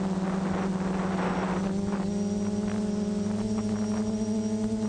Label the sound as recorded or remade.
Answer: recorded